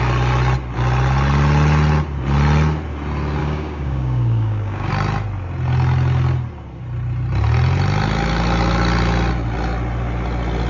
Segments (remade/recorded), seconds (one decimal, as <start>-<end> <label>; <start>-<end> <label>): 0.0-3.4 recorded; 3.4-4.9 remade; 4.9-10.7 recorded